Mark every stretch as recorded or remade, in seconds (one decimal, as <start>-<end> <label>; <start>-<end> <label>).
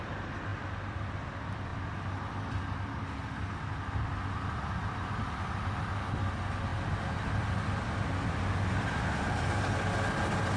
0.0-10.6 recorded